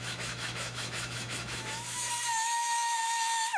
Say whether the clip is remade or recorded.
remade